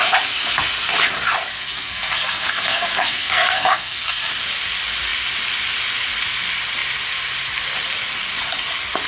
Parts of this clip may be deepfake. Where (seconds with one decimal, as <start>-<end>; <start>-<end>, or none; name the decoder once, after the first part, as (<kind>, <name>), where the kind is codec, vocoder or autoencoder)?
1.5-4.3 (codec, SNAC)